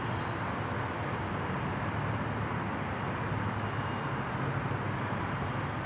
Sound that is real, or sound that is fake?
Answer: real